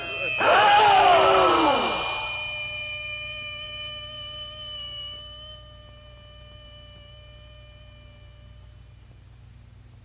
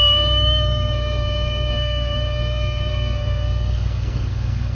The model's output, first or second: second